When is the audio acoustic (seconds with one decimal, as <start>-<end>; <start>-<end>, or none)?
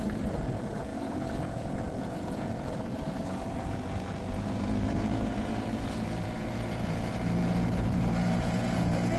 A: none